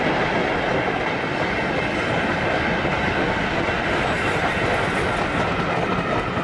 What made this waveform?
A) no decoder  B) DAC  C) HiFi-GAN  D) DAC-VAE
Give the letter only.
A